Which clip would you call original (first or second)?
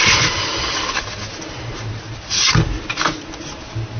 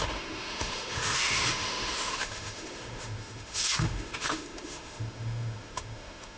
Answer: first